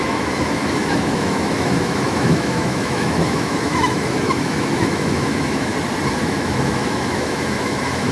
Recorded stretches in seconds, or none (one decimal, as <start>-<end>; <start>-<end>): 5.7-6.2